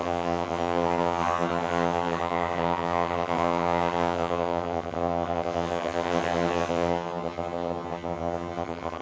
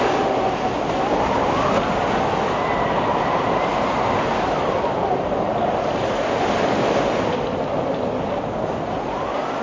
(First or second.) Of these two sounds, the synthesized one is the first